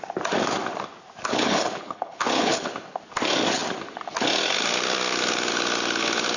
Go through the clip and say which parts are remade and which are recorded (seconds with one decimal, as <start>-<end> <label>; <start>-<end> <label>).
0.0-1.3 recorded; 1.3-2.7 remade; 2.7-6.4 recorded